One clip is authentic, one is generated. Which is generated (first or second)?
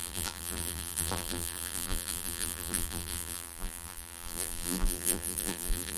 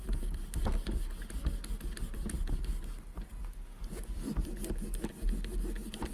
first